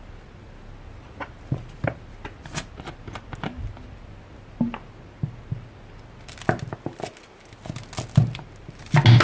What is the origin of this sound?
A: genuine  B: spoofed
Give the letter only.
A